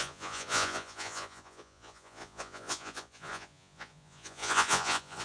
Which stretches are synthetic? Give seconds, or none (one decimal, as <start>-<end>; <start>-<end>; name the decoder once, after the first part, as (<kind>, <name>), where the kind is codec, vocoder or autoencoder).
0.0-5.2 (vocoder, Vocos)